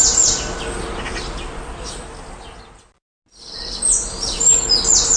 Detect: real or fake real